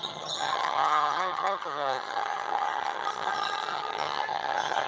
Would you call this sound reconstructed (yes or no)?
yes